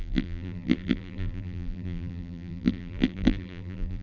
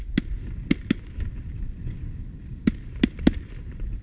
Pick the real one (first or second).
second